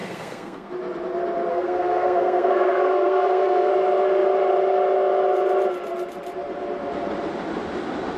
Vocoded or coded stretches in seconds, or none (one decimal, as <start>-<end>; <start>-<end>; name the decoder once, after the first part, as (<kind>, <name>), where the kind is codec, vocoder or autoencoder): 0.0-0.7 (codec, SNAC); 1.5-3.7